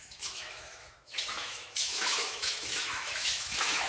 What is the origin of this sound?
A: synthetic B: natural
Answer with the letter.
A